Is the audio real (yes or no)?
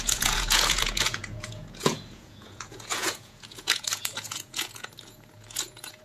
no